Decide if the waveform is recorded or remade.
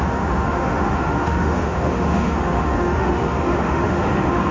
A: remade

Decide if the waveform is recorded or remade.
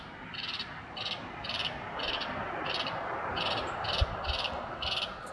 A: remade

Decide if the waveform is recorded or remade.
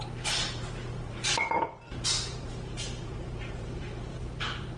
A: remade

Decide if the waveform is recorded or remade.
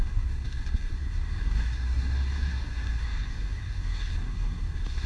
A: remade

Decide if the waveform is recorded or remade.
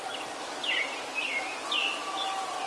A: recorded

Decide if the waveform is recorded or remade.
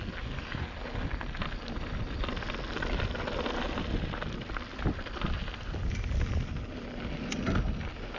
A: recorded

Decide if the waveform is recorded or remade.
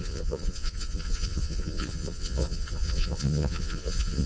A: remade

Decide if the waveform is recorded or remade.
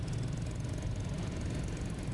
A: recorded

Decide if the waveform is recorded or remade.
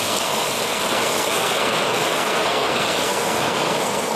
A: remade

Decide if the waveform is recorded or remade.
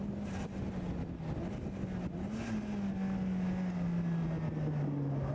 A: recorded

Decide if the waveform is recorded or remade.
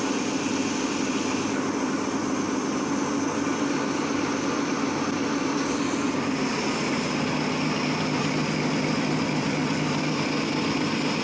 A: recorded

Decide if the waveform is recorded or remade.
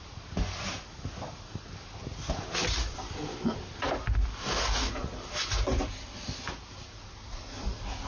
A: recorded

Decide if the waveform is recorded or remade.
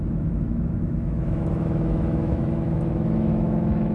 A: remade